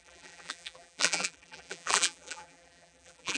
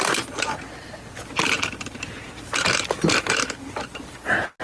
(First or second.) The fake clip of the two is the first